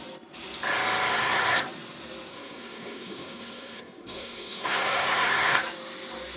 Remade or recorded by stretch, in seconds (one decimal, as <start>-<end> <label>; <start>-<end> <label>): 0.0-1.1 recorded; 1.1-1.6 remade; 1.6-2.3 recorded; 2.3-5.6 remade; 5.6-6.4 recorded